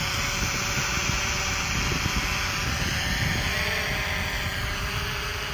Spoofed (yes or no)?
no